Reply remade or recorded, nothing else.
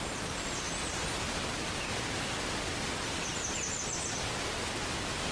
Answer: recorded